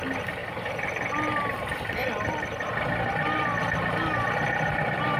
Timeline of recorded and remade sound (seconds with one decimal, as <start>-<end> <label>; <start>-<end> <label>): 0.0-5.2 remade